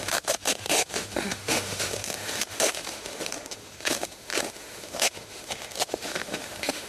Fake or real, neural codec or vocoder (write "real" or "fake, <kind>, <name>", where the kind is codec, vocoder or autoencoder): fake, autoencoder, DAC-VAE